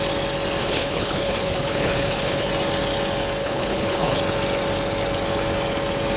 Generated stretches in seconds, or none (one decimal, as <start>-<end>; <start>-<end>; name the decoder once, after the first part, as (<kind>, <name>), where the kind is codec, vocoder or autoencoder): 0.6-2.5 (codec, HILCodec); 3.4-4.2

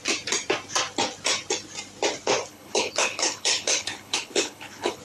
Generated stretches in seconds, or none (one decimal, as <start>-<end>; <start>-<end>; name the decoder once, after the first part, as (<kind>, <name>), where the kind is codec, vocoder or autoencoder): 2.5-5.0 (codec, HILCodec)

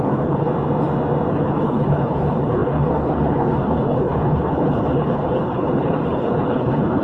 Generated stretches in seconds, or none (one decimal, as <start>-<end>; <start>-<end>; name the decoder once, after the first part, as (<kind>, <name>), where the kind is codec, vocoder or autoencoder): 0.0-0.5 (codec, HILCodec); 1.3-7.0